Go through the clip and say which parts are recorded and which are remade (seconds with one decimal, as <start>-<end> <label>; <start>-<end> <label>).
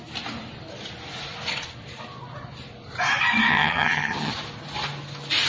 0.0-3.5 recorded; 3.5-4.3 remade; 4.3-5.5 recorded